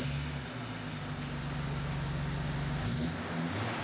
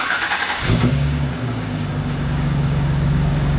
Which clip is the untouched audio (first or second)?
first